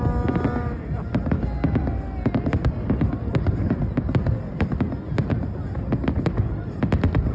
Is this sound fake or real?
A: real